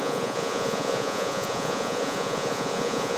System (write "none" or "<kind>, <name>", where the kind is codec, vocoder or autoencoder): vocoder, Vocos